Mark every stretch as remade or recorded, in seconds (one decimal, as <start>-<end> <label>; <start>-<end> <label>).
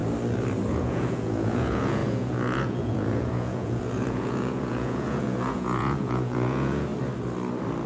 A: 0.0-0.7 recorded; 0.7-6.9 remade; 6.9-7.9 recorded